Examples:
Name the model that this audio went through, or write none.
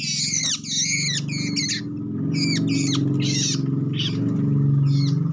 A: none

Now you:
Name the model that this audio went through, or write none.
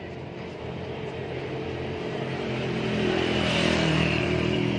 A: vocoder, BigVGAN v2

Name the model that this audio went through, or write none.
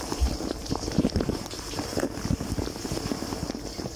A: none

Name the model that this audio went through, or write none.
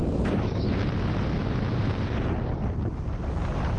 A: none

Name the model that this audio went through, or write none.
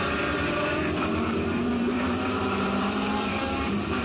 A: vocoder, BigVGAN v2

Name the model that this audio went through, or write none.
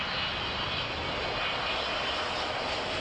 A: none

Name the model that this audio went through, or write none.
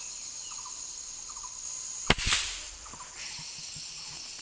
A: none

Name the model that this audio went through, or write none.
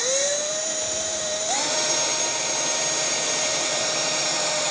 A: vocoder, BigVGAN v2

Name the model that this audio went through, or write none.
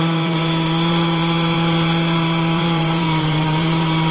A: vocoder, BigVGAN v2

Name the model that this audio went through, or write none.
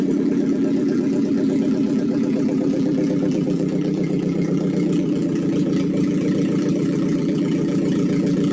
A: vocoder, BigVGAN v2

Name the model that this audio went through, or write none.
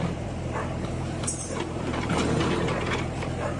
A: vocoder, BigVGAN v2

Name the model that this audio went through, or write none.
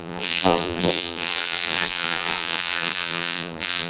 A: vocoder, BigVGAN v2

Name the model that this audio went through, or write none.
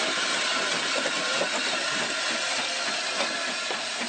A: none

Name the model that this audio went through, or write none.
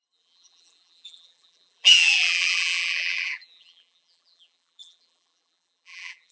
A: vocoder, BigVGAN v2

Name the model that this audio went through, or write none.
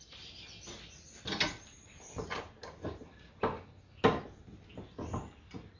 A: none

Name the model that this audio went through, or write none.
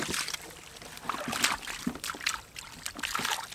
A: none